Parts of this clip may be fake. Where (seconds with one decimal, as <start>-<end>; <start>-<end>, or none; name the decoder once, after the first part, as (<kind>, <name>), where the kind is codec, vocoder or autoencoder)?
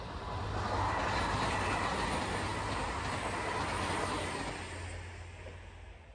none